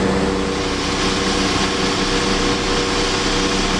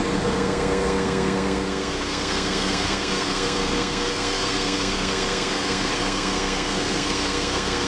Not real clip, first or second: second